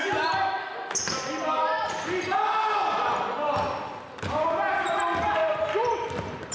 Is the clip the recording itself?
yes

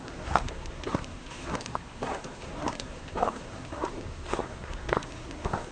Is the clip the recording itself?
no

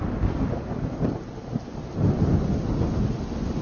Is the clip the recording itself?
yes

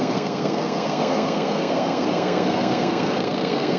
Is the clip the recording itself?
no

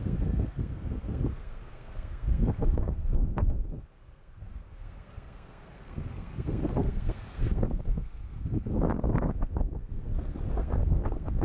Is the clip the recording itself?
no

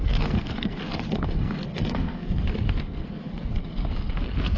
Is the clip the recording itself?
no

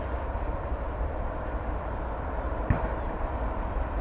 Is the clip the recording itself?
yes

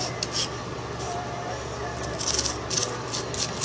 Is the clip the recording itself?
yes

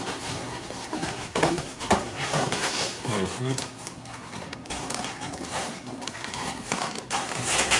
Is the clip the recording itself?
no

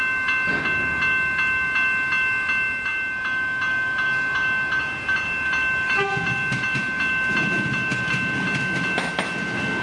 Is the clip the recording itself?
yes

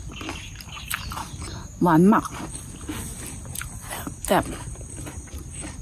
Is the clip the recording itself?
yes